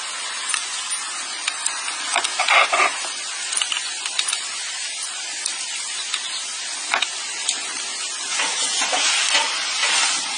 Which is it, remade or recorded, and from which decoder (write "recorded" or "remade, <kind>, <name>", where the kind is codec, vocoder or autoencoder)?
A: recorded